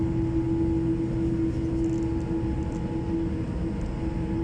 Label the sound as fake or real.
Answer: real